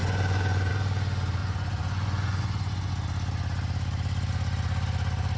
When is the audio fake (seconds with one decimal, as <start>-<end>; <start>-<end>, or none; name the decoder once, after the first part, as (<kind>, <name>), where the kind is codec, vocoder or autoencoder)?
0.0-0.7 (vocoder, Vocos); 1.4-2.9